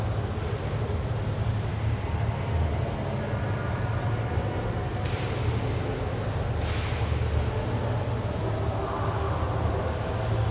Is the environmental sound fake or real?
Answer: real